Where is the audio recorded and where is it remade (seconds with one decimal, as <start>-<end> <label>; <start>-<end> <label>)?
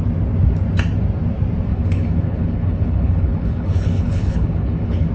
0.0-1.7 recorded; 1.7-5.1 remade